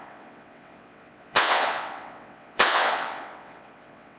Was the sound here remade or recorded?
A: remade